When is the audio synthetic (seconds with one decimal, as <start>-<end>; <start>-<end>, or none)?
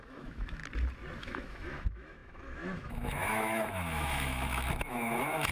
0.0-0.6; 1.2-5.5